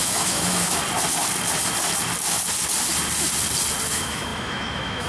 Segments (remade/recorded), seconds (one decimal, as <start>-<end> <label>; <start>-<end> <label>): 0.0-0.8 remade; 0.8-3.9 recorded; 3.9-5.1 remade